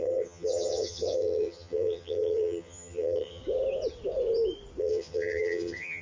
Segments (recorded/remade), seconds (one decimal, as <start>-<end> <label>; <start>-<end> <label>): 0.0-3.4 remade; 3.4-4.8 recorded; 4.8-6.0 remade